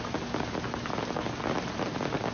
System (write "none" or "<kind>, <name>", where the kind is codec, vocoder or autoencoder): none